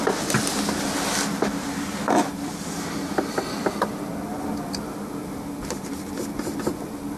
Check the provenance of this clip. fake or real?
real